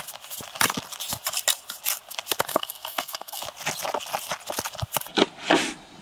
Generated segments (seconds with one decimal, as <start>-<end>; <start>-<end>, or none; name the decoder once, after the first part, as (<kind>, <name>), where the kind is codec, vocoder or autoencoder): 2.5-3.4 (codec, SNAC)